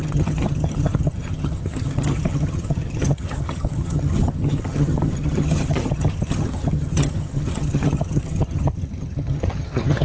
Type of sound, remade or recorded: remade